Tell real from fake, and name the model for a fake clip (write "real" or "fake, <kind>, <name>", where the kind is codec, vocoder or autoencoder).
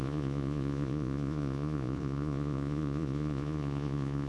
fake, vocoder, Vocos